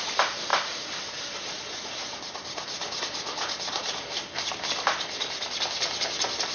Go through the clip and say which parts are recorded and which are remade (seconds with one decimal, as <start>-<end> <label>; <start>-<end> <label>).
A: 0.0-6.5 recorded